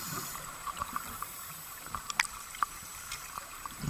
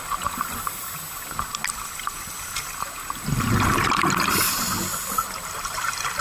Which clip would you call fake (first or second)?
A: first